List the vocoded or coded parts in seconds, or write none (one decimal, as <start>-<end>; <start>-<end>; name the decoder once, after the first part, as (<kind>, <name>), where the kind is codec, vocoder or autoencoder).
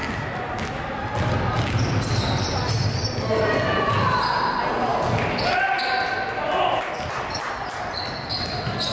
none